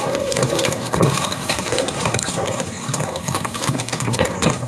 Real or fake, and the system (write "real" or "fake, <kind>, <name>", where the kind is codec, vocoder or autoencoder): fake, codec, SNAC